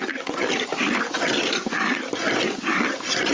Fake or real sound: real